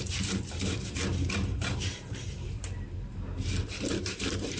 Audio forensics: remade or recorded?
remade